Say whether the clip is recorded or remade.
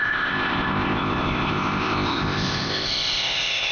remade